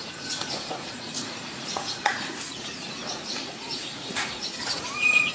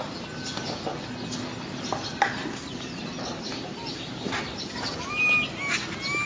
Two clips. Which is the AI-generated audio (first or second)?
first